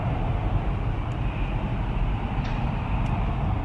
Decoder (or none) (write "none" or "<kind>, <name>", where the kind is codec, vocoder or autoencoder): none